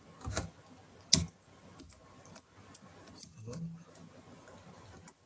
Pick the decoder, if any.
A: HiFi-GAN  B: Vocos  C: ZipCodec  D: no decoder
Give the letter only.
D